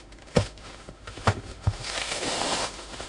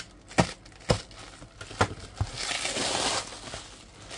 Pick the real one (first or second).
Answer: second